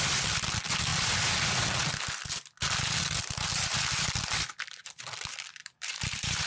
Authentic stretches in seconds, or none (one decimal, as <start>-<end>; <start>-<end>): 0.0-5.6

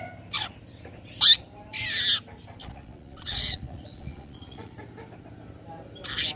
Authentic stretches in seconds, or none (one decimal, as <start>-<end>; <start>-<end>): 0.0-2.6; 4.8-6.4

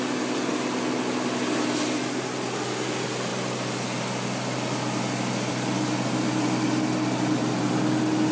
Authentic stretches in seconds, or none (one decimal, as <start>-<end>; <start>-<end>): 0.0-8.3

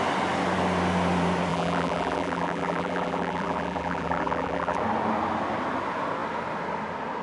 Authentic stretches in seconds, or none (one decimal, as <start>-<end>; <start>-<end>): 0.0-1.5; 4.8-7.2

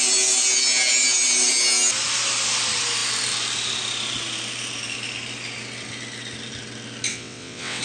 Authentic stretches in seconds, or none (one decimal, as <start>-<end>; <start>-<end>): 0.0-7.1

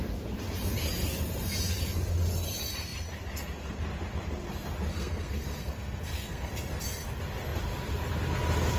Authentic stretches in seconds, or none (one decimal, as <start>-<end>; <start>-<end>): 0.0-4.9; 6.5-8.8

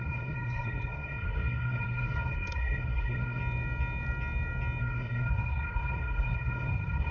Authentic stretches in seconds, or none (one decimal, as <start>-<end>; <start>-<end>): 3.4-4.8